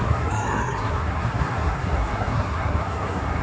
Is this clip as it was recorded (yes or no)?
no